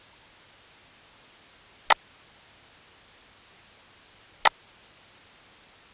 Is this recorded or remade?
recorded